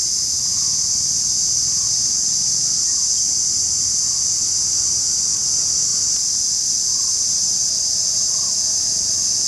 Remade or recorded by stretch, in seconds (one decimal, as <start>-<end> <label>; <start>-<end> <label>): 0.0-9.5 recorded